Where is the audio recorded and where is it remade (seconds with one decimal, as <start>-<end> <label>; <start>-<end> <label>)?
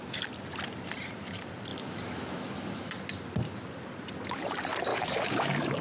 0.0-1.7 recorded; 1.7-2.9 remade; 2.9-4.9 recorded; 4.9-5.8 remade